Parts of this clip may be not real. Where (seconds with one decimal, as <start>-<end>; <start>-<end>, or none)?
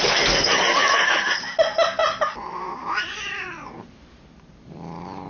0.8-1.3; 2.0-5.3